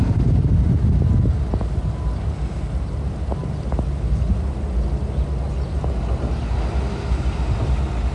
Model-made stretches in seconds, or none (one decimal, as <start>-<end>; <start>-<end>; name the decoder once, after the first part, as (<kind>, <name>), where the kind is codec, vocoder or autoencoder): none